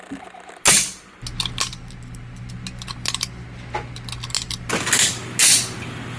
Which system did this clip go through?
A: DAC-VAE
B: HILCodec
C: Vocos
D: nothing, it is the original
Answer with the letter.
D